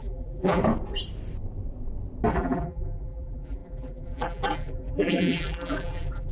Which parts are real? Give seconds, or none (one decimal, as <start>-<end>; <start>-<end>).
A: 0.6-2.3